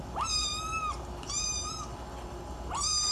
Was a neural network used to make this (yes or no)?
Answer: no